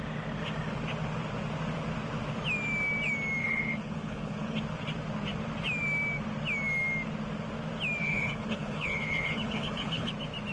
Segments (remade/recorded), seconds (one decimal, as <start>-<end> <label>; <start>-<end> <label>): 0.0-3.4 recorded; 3.4-4.6 remade; 4.6-8.0 recorded; 8.0-10.1 remade; 10.1-10.5 recorded